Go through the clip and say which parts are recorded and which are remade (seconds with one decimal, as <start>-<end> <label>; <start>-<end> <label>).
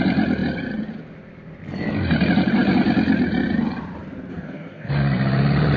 0.0-4.3 recorded; 4.3-4.9 remade; 4.9-5.8 recorded